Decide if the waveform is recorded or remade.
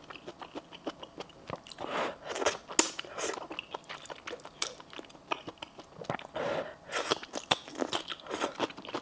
recorded